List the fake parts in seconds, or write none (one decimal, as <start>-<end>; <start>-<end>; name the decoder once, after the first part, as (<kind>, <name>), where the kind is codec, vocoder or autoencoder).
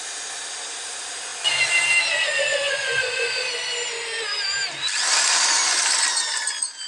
2.5-3.4 (vocoder, Vocos)